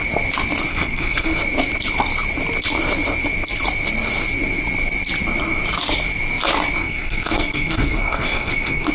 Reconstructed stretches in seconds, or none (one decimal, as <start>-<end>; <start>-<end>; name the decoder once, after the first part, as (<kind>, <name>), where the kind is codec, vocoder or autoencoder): 0.7-1.4 (codec, SNAC); 6.8-8.9